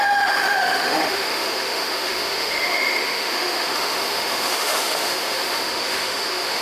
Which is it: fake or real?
fake